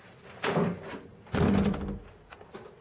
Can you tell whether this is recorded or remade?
recorded